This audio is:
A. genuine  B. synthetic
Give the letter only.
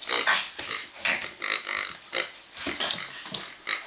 A